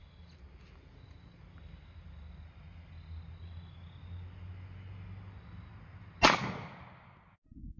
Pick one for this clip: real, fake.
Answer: real